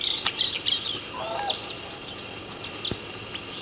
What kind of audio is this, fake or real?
real